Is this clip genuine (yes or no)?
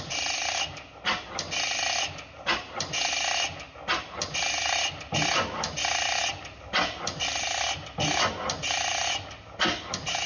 yes